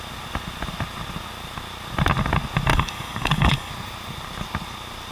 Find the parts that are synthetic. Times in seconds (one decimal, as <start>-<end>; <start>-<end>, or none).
2.7-3.7